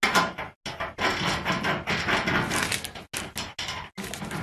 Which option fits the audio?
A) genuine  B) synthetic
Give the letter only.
A